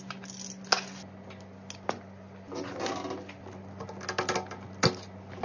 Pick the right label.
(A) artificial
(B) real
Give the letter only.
B